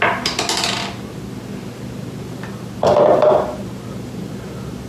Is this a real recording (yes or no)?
yes